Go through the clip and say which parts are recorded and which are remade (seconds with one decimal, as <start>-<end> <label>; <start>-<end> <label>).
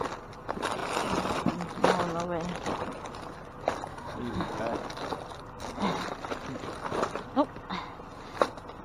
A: 0.0-3.9 recorded; 3.9-4.6 remade; 4.6-8.8 recorded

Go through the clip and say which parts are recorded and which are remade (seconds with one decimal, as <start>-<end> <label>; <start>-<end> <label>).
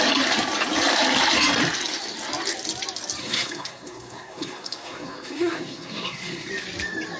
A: 0.0-3.2 recorded; 3.2-6.5 remade; 6.5-7.2 recorded